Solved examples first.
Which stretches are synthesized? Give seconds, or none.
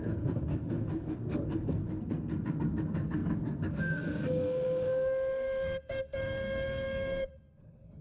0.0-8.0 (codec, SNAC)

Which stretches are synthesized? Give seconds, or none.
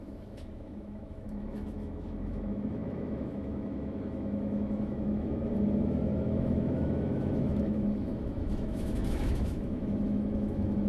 0.0-10.9 (autoencoder, DAC-VAE)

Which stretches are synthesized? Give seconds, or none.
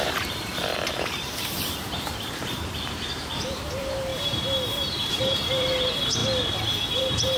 0.0-6.2 (vocoder, BigVGAN v2); 7.0-7.4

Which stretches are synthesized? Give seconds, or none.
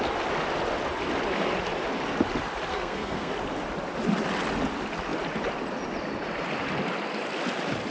2.7-3.3 (codec, SNAC)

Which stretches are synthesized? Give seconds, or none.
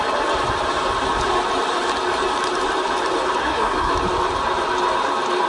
3.4-3.9 (codec, SNAC)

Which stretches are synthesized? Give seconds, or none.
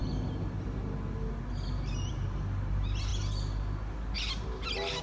none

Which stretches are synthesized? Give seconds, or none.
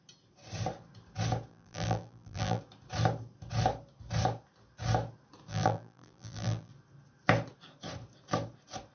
1.5-2.6 (vocoder, BigVGAN v2); 5.5-6.7